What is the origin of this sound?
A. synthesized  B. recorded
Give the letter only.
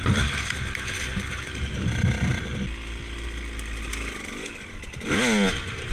B